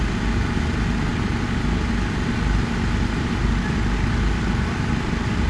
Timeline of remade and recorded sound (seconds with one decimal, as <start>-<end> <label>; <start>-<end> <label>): 0.0-5.5 recorded

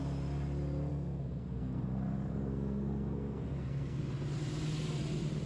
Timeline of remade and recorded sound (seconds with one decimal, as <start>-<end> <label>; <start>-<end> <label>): 0.0-0.9 recorded; 0.9-4.0 remade; 4.0-5.5 recorded

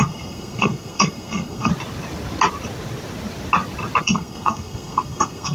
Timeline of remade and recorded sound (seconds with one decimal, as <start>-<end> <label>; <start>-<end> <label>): 0.0-1.7 remade; 1.7-4.0 recorded; 4.0-5.5 remade

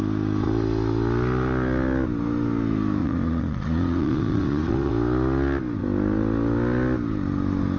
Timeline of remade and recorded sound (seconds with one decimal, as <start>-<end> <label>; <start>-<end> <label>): 0.0-3.0 recorded; 3.0-4.9 remade; 4.9-7.8 recorded

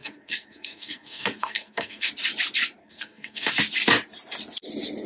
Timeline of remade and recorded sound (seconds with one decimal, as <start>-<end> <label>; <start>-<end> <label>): 0.0-2.1 remade; 2.1-2.8 recorded; 2.8-3.5 remade; 3.5-5.1 recorded